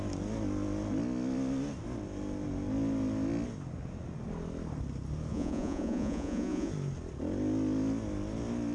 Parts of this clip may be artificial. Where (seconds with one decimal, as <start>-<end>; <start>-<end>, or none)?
5.3-6.7